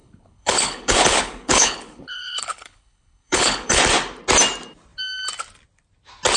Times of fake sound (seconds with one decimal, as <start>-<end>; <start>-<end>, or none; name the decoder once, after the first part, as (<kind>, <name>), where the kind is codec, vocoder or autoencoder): 0.0-3.8 (codec, HILCodec)